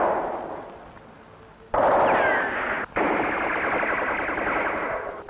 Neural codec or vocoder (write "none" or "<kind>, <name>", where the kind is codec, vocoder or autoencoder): none